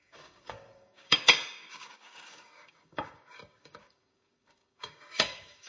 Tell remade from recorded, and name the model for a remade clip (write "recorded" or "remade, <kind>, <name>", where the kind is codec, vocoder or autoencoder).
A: remade, codec, DAC